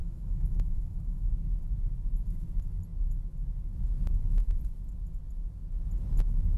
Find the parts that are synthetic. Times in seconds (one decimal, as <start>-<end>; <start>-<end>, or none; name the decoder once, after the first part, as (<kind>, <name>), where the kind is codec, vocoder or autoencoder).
0.0-1.3 (autoencoder, DAC-VAE)